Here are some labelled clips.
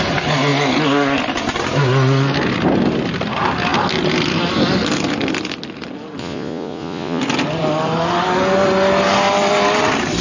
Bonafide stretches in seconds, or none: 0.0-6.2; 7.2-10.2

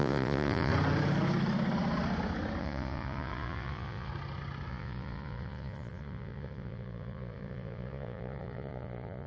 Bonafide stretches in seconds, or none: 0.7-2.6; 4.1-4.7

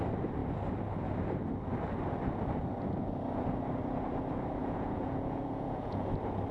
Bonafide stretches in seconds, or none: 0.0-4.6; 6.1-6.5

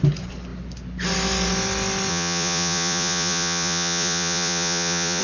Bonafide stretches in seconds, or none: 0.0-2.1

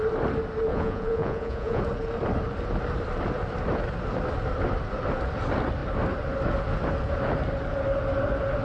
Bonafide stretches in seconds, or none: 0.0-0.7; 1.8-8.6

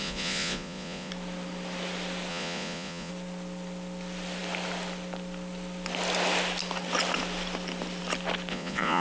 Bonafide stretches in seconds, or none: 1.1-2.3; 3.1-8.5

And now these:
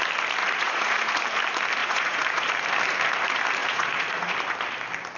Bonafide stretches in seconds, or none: 0.0-0.4; 1.1-1.8; 2.5-3.6; 4.3-5.2

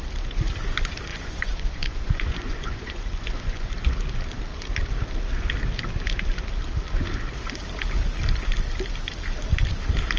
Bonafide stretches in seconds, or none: 0.0-1.1; 3.7-10.2